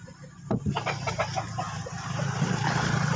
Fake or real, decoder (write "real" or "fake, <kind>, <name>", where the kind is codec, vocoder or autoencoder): fake, vocoder, BigVGAN v2